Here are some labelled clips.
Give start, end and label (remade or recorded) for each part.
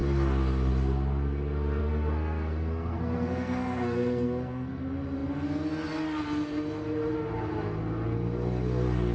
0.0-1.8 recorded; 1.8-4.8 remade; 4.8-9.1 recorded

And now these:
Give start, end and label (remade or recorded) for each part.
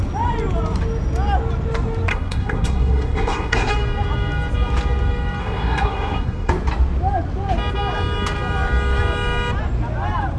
0.0-2.1 recorded; 2.1-3.7 remade; 3.7-5.4 recorded; 5.4-6.5 remade; 6.5-10.4 recorded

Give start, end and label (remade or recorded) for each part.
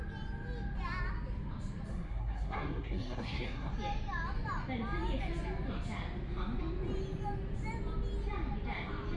0.0-1.9 recorded; 1.9-3.7 remade; 3.7-9.2 recorded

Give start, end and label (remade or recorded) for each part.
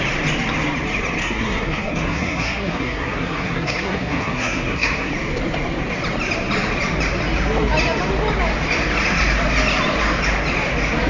0.0-1.2 recorded; 1.2-5.1 remade; 5.1-11.1 recorded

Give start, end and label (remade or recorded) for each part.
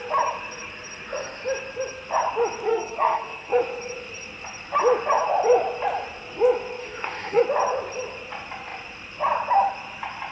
0.0-2.7 recorded; 2.7-3.6 remade; 3.6-6.8 recorded; 6.8-7.4 remade; 7.4-10.3 recorded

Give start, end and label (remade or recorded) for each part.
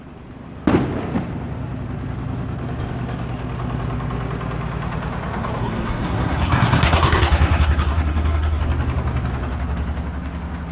0.0-5.6 recorded; 5.6-8.6 remade; 8.6-10.7 recorded